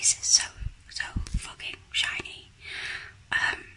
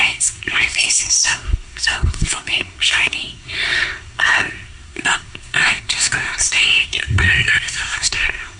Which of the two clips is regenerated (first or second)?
second